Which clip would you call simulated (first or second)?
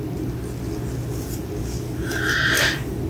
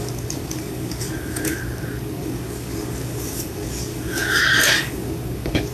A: second